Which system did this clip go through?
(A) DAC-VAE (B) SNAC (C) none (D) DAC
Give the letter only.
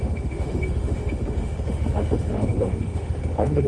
A